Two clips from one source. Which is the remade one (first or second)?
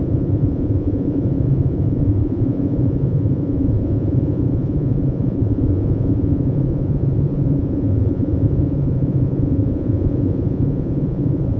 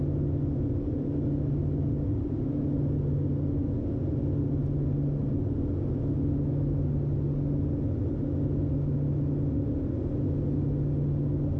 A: first